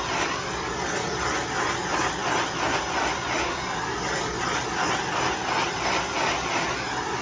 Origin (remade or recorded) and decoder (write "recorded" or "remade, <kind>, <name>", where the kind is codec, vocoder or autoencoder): recorded